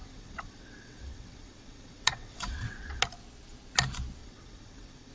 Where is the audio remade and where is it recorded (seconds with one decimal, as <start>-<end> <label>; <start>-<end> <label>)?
0.0-3.0 remade; 3.0-4.2 recorded; 4.2-5.1 remade